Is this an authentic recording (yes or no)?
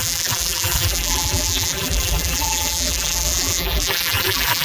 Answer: no